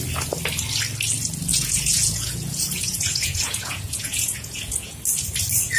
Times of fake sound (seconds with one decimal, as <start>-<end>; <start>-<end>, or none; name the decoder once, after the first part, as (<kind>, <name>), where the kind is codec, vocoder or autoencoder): 1.5-5.0 (vocoder, Vocos)